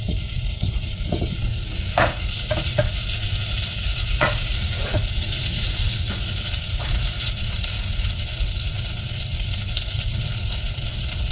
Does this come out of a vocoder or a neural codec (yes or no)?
yes